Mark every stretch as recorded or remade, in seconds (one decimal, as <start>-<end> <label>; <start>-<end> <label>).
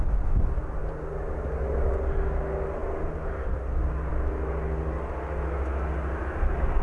0.0-6.8 recorded